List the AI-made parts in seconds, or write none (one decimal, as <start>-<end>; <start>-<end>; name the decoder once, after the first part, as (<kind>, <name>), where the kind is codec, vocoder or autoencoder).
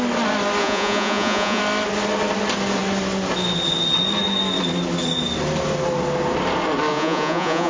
0.6-1.6 (vocoder, Vocos); 6.9-7.7